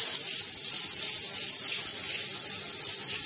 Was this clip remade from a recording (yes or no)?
no